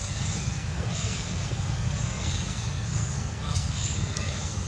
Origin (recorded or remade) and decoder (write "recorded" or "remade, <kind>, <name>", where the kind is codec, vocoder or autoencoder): remade, codec, SNAC